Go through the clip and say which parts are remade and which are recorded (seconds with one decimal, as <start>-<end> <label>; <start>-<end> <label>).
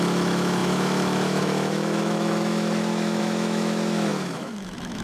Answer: 0.0-5.0 remade